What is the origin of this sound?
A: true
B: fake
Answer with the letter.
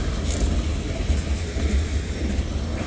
A